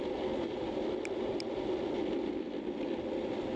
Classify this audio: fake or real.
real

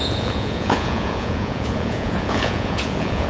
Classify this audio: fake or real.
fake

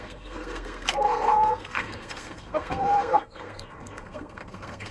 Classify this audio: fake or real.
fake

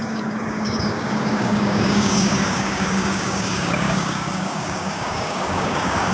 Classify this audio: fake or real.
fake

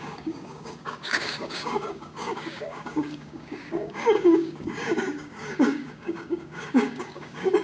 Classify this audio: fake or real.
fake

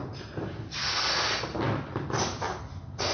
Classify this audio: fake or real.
real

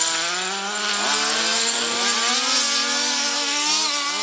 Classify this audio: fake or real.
real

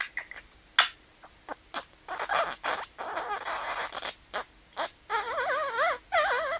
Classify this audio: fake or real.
real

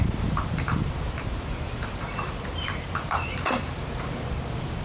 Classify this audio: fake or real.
fake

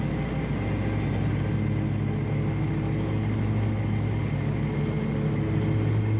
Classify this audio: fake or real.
real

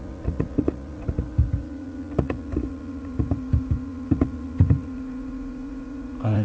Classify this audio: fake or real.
fake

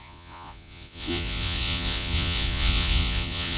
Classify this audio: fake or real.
fake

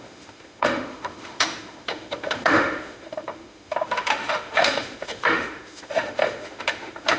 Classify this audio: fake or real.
fake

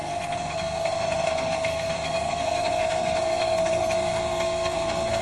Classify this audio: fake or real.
fake